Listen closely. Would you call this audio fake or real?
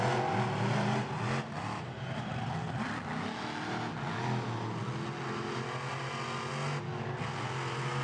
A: real